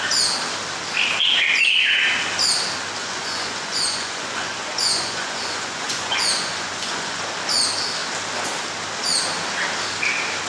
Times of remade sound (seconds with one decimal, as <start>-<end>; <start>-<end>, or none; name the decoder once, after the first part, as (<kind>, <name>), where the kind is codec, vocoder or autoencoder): 3.0-7.2 (vocoder, Vocos)